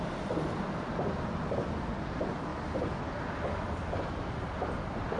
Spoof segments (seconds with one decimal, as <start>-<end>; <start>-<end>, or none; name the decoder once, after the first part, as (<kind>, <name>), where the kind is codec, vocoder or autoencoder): none